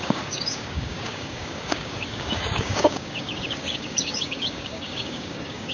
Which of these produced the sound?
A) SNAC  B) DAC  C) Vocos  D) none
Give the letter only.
B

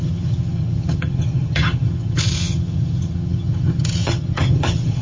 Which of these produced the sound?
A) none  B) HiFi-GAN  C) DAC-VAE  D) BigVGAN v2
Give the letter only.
B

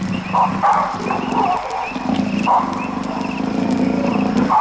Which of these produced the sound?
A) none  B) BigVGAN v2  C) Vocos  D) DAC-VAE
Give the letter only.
A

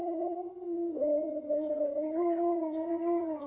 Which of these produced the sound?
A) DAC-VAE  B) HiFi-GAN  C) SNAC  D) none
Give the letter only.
B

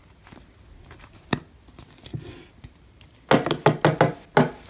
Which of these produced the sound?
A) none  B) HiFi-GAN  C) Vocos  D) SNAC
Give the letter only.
A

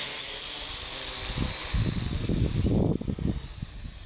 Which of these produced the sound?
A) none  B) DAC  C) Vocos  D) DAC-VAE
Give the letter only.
A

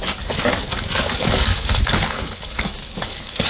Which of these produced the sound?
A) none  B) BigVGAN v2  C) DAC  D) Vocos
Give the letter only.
C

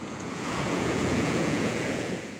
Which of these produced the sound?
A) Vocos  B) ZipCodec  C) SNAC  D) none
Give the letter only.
A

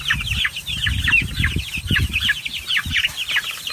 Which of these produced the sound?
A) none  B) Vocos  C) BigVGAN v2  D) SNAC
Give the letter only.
C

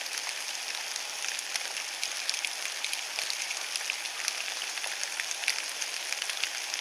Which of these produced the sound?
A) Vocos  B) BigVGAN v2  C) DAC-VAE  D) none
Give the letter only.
D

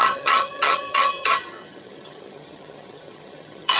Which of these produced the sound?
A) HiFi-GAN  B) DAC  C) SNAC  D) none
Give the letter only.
A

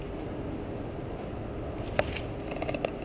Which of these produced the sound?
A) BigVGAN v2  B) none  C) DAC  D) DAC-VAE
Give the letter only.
B